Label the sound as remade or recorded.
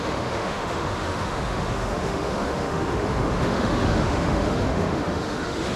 remade